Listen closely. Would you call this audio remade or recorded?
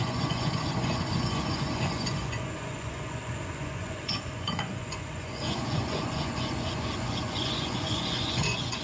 remade